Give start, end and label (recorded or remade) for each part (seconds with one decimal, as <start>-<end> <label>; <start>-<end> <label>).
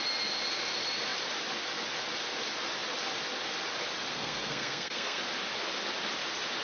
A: 0.0-4.1 recorded; 4.1-5.2 remade; 5.2-6.6 recorded